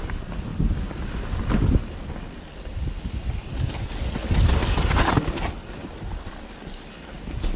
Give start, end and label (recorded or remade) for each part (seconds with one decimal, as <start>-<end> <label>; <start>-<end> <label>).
0.0-7.6 recorded